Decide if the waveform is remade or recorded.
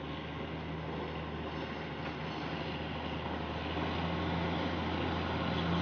recorded